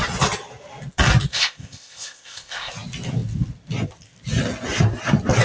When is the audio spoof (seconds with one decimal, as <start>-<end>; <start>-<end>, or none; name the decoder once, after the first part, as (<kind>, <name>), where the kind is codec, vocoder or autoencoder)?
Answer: 1.3-2.7 (codec, ZipCodec)